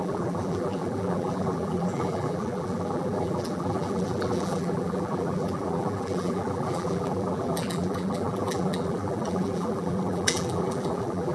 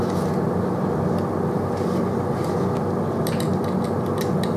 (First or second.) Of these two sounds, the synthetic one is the first